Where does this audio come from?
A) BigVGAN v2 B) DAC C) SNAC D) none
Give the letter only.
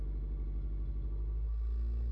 D